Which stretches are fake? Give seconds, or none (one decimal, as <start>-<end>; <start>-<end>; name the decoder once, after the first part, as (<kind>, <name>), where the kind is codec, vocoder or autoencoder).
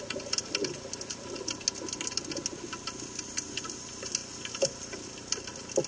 none